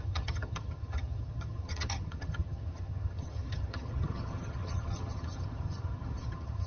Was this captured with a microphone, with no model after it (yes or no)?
no